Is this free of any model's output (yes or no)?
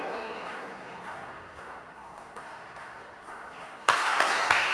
no